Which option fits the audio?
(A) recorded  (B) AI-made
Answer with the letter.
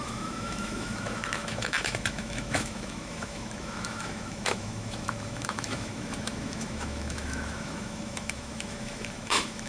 B